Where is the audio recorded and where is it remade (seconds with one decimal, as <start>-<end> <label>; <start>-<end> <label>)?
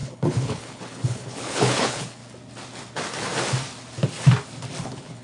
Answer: 0.0-2.2 remade; 2.2-4.8 recorded; 4.8-5.2 remade